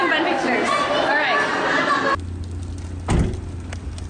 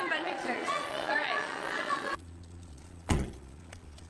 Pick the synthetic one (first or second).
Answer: second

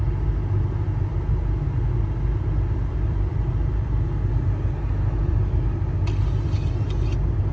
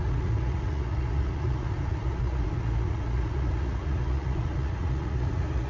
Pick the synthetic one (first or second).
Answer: second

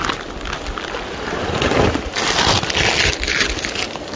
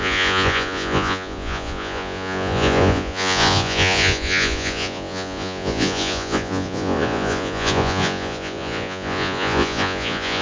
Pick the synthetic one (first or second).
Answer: second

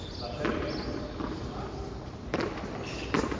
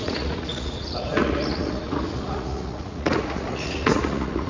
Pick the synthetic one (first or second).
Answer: second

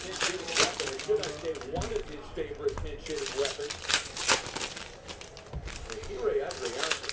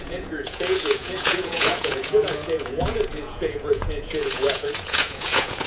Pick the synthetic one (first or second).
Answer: second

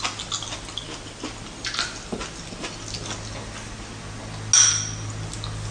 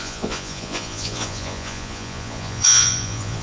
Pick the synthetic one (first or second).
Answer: second